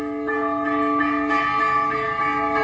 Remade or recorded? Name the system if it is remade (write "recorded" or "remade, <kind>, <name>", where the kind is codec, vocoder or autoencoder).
recorded